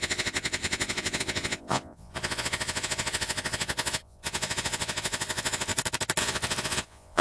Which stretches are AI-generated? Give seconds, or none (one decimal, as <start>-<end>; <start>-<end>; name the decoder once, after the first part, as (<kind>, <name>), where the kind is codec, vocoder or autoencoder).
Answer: 0.0-5.7 (vocoder, Vocos); 6.2-7.2